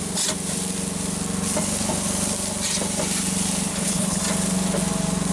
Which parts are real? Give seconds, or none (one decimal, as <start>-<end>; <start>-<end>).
0.0-3.7; 4.2-5.3